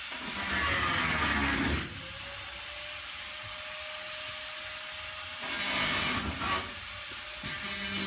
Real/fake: real